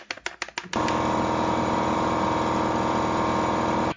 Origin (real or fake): real